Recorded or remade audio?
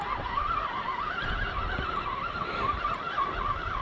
recorded